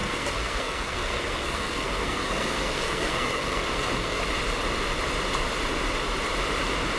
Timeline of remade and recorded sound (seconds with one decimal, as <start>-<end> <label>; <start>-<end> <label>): 0.0-4.2 remade; 4.2-7.0 recorded